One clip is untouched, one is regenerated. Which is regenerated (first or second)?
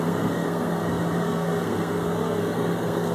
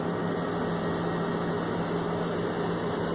first